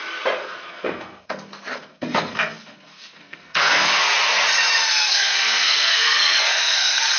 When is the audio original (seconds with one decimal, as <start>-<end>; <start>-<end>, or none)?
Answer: 0.0-0.4; 4.0-4.9